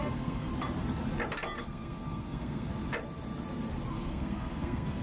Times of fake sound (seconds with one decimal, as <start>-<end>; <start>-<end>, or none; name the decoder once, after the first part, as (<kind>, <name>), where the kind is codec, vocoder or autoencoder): 0.0-0.5 (codec, SNAC); 1.6-2.7; 3.9-5.0